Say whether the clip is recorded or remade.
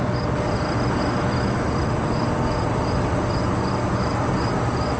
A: recorded